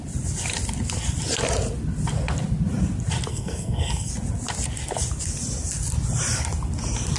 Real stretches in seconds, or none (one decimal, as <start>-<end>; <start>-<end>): 0.0-3.3; 4.1-7.2